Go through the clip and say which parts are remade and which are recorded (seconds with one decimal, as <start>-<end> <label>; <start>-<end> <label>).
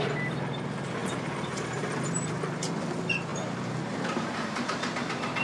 0.0-1.0 recorded; 1.0-2.0 remade; 2.0-3.3 recorded; 3.3-4.6 remade; 4.6-5.4 recorded